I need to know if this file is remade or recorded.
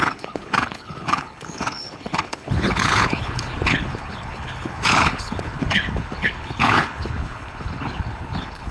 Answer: remade